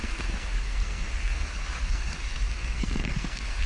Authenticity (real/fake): fake